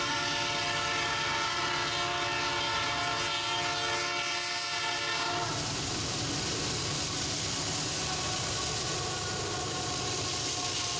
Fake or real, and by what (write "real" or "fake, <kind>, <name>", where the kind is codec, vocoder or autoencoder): real